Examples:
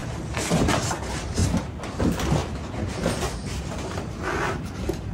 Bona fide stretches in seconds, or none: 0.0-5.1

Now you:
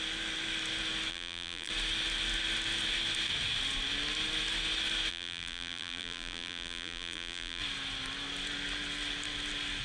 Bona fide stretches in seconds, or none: 0.0-1.1; 1.7-5.1; 7.6-9.8

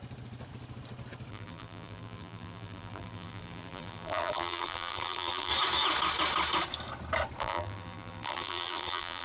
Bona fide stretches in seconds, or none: 0.0-1.3; 5.5-7.4